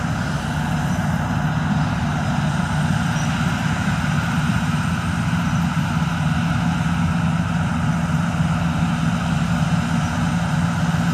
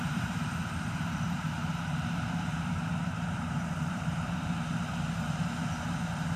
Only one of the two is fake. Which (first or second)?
second